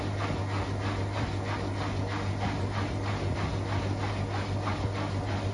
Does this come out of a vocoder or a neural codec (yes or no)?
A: no